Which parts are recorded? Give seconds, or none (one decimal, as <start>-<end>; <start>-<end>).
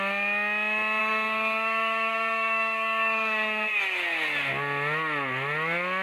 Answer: 0.0-1.0; 3.8-6.0